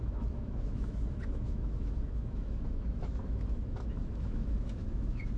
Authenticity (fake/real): fake